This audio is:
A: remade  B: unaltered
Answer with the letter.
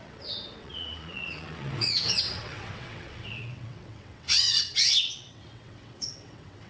A